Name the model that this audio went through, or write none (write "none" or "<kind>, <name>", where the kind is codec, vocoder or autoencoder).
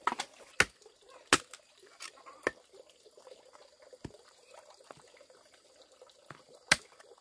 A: none